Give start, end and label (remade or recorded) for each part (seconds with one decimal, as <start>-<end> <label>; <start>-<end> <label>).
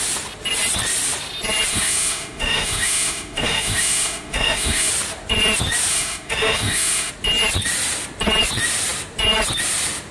0.0-1.7 recorded; 1.7-4.9 remade; 4.9-5.9 recorded; 5.9-7.1 remade; 7.1-10.1 recorded